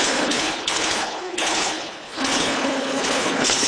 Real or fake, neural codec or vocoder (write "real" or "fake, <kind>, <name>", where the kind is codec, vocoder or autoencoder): fake, codec, HILCodec